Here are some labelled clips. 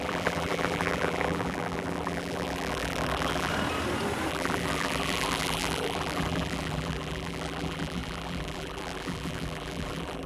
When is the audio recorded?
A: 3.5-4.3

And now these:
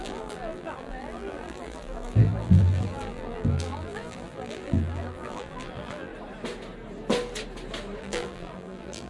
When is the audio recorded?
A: 6.1-8.0

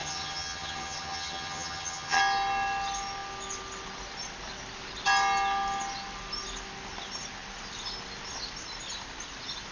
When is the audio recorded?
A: 2.2-9.7

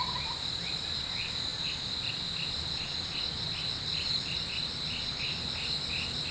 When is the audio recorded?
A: 0.0-6.3